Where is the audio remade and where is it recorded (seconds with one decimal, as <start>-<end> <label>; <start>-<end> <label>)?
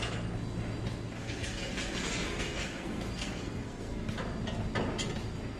0.0-1.2 recorded; 1.2-4.1 remade; 4.1-5.6 recorded